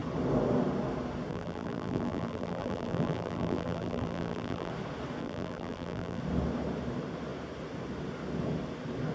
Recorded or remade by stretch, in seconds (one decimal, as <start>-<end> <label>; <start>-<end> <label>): 0.0-1.3 recorded; 1.3-4.7 remade; 4.7-5.2 recorded; 5.2-6.2 remade; 6.2-9.1 recorded